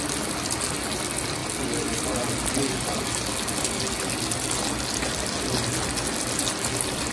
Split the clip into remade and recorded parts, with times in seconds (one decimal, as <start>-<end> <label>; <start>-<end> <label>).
0.0-7.1 recorded